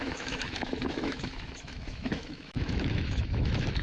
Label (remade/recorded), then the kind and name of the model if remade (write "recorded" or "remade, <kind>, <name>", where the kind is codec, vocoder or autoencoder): remade, autoencoder, DAC-VAE